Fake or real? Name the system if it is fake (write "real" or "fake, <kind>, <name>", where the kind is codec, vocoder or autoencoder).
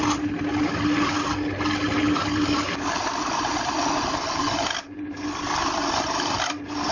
real